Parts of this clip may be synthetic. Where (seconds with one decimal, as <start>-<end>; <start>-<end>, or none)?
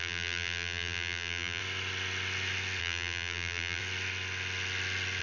0.0-1.6; 2.8-3.8